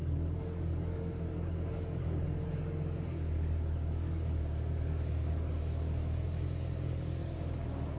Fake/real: fake